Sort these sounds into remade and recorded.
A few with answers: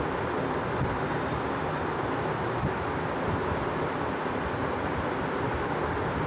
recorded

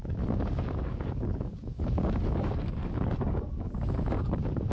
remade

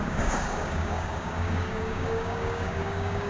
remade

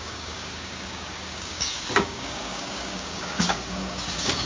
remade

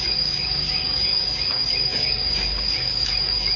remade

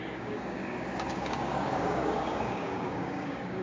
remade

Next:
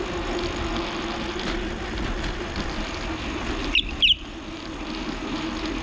recorded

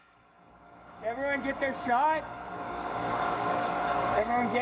remade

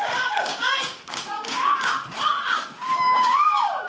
remade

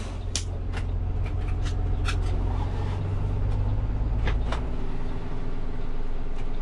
recorded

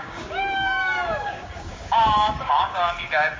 remade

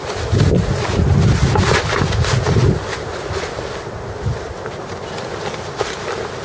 recorded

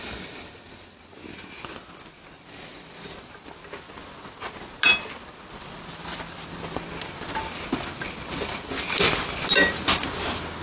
recorded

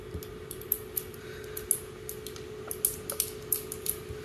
recorded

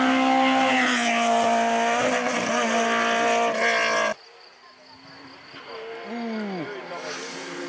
recorded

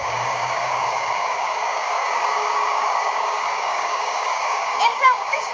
remade